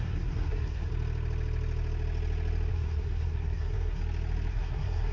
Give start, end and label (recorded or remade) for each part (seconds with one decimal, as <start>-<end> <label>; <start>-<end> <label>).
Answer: 0.0-0.9 remade; 0.9-2.7 recorded; 2.7-4.0 remade; 4.0-4.5 recorded; 4.5-5.1 remade